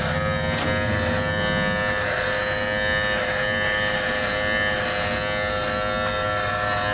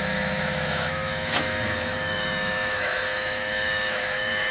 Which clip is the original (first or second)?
first